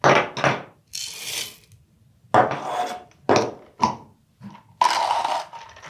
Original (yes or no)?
yes